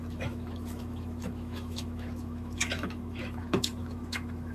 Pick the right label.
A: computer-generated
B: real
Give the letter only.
A